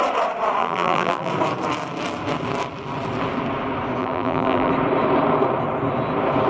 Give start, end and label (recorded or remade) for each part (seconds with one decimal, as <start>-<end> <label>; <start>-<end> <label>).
0.0-0.6 recorded; 0.6-1.3 remade; 1.3-4.0 recorded; 4.0-4.7 remade; 4.7-6.5 recorded